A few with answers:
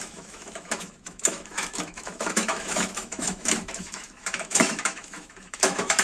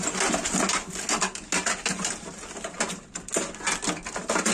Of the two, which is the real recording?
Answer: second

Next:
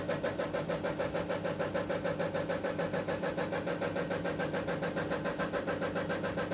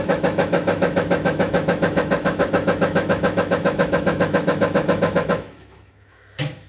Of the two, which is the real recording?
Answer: first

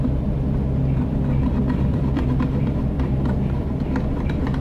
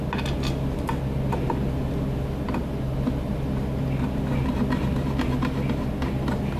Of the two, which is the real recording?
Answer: second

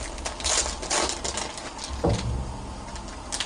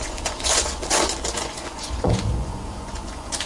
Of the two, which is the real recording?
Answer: first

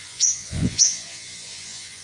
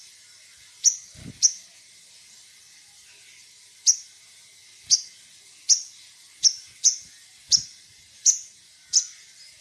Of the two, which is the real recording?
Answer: second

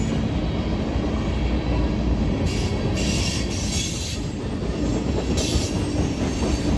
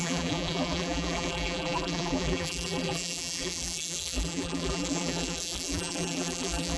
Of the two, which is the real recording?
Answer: first